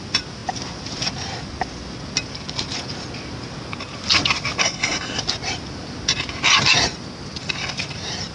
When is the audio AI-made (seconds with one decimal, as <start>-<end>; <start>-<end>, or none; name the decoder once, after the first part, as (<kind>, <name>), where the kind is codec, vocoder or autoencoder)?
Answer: 4.6-5.2 (codec, SNAC)

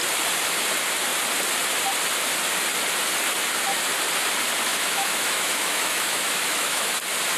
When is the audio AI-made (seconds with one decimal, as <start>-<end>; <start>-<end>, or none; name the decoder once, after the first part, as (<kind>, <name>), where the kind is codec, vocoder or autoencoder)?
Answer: 4.7-6.9 (autoencoder, DAC-VAE)